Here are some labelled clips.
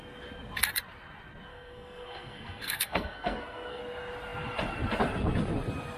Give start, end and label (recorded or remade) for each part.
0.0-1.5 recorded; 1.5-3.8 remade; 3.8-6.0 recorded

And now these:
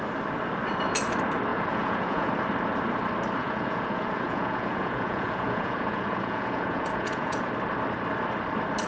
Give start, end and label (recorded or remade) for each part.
0.0-1.5 recorded; 1.5-2.3 remade; 2.3-3.4 recorded; 3.4-7.5 remade; 7.5-8.9 recorded

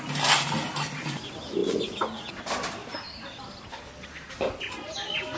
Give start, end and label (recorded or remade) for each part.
0.0-5.4 recorded